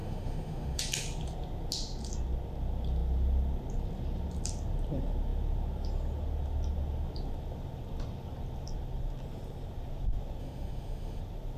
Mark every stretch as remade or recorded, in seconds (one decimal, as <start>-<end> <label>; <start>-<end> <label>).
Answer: 0.0-0.8 remade; 0.8-10.4 recorded; 10.4-11.2 remade; 11.2-11.6 recorded